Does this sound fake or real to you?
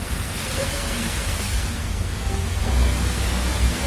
fake